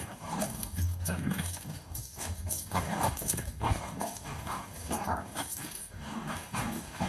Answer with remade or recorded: remade